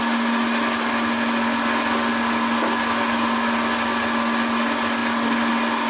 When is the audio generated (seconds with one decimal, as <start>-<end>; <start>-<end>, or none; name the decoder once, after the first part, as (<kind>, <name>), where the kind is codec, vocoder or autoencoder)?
none